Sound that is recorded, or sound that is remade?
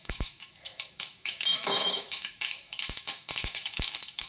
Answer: remade